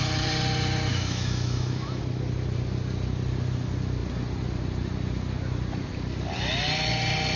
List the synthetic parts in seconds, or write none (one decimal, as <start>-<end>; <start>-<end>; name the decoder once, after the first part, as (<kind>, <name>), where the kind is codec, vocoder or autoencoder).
0.9-2.0 (autoencoder, DAC-VAE)